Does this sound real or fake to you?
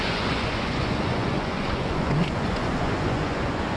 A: fake